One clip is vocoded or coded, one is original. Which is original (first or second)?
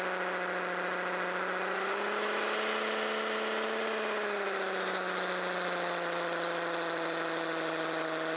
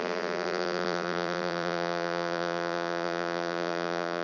first